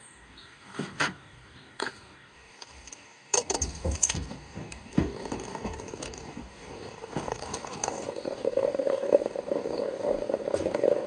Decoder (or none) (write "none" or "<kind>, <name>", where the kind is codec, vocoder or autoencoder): codec, DAC